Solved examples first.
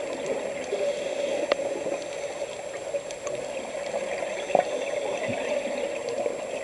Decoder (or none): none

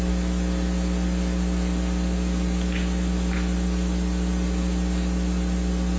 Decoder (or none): none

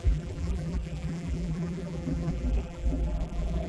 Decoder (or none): vocoder, BigVGAN v2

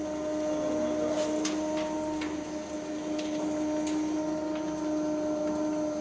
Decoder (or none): none